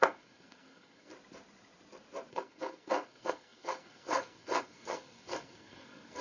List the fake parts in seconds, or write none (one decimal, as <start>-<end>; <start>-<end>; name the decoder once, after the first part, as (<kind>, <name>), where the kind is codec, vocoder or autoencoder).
0.0-1.1 (codec, SNAC); 2.3-6.2